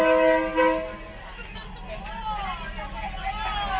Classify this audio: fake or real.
real